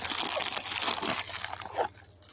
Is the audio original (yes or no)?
yes